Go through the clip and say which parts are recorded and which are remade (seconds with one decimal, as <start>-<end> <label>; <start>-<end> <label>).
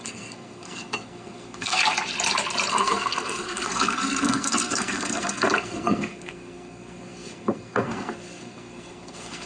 0.0-1.8 remade; 1.8-2.7 recorded; 2.7-9.5 remade